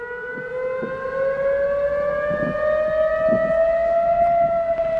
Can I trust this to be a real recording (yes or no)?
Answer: yes